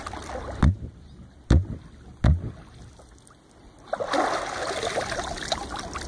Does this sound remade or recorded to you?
recorded